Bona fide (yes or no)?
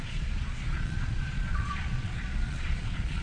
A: no